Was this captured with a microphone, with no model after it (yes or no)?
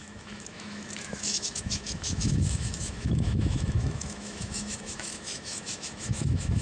no